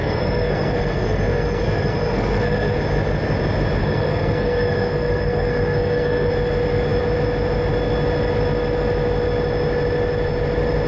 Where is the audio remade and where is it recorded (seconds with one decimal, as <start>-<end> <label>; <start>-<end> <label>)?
0.0-2.8 remade; 2.8-3.8 recorded; 3.8-6.3 remade; 6.3-10.9 recorded